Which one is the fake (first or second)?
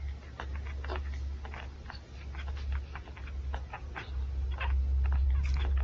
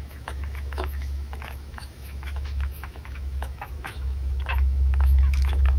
second